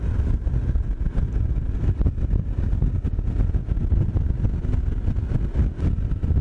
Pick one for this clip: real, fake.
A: real